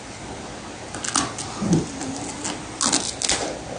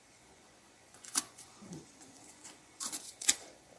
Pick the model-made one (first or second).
second